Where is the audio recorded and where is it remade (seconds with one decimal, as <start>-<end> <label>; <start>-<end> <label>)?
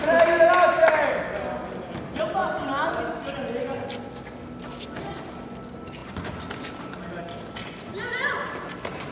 0.0-9.1 recorded